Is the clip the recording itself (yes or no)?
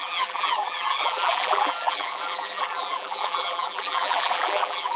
no